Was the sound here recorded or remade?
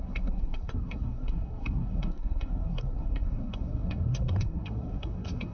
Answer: remade